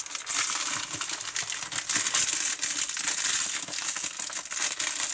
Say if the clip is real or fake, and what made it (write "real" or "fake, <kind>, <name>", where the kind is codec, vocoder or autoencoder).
real